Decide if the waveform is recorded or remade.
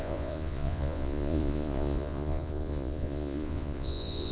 remade